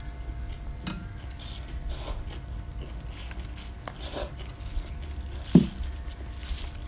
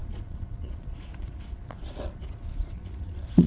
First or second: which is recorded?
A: first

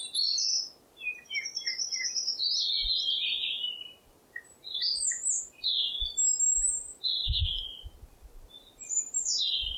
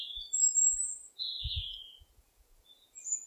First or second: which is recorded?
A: first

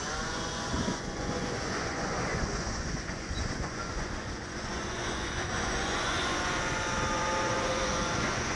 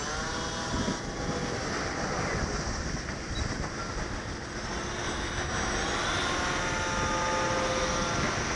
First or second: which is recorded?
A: second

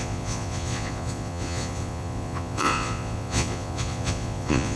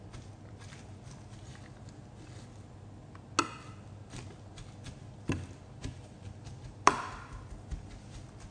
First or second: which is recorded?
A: second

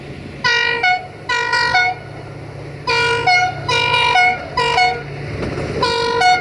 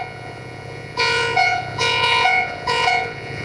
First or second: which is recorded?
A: first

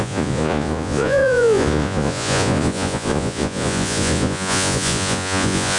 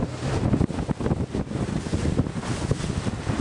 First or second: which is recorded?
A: second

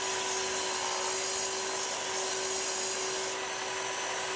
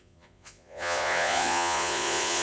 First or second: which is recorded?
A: first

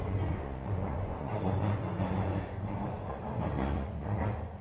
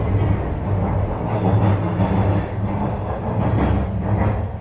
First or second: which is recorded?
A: second